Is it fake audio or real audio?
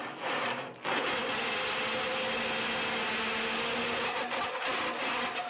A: real